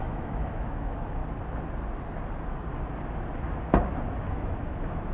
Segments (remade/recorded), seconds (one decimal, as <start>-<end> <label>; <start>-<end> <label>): 0.0-1.2 remade; 1.2-4.3 recorded; 4.3-5.1 remade